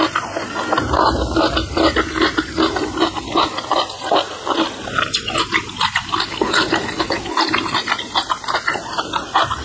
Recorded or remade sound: recorded